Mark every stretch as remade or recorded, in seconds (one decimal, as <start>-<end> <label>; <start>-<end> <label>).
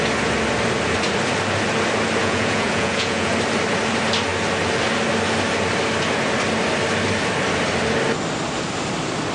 0.0-2.2 recorded; 2.2-3.3 remade; 3.3-9.3 recorded